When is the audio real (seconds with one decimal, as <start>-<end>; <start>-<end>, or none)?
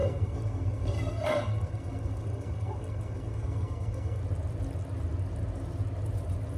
4.2-6.6